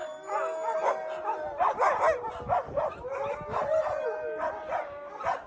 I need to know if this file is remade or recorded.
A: recorded